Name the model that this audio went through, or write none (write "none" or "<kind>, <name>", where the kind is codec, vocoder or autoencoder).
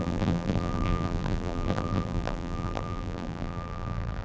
vocoder, BigVGAN v2